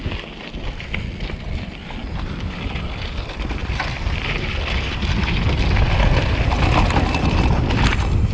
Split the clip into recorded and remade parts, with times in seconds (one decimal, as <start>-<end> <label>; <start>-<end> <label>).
0.0-8.3 recorded

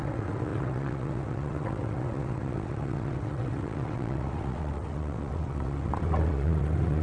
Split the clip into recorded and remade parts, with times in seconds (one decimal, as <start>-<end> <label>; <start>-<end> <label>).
0.0-7.0 remade

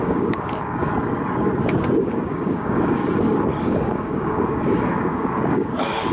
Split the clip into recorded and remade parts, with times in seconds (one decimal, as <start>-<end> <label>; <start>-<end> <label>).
0.0-0.9 remade; 0.9-2.0 recorded; 2.0-3.0 remade; 3.0-3.5 recorded; 3.5-6.1 remade

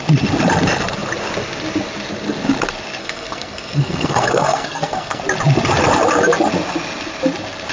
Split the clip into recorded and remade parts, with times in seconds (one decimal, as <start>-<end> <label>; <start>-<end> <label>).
0.0-3.0 recorded; 3.0-5.2 remade; 5.2-7.7 recorded

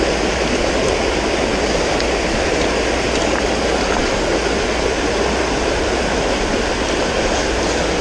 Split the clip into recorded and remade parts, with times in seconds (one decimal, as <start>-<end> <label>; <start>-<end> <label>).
0.0-8.0 recorded